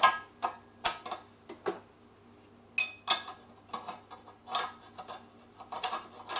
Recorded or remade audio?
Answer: recorded